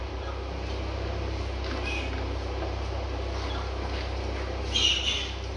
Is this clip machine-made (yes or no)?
no